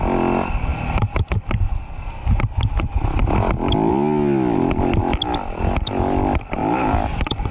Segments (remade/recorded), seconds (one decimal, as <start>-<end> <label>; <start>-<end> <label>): 0.0-6.6 recorded; 6.6-7.5 remade